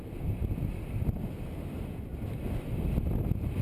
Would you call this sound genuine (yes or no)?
yes